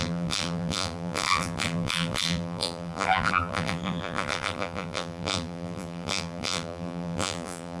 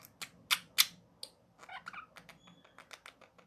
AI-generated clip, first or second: first